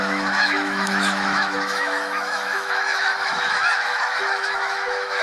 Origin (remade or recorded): remade